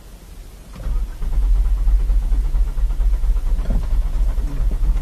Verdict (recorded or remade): recorded